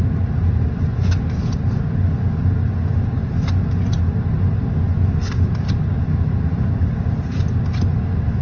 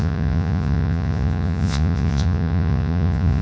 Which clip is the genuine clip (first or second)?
first